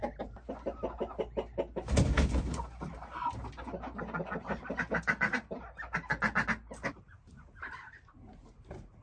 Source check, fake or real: real